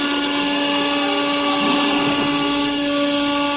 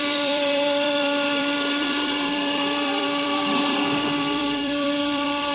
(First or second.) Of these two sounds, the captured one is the first